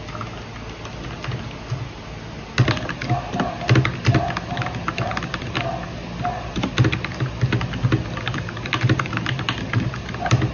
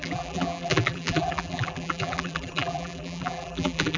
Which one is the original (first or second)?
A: first